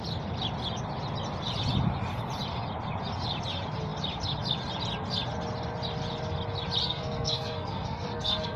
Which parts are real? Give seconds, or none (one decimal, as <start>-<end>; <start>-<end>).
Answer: 0.0-6.8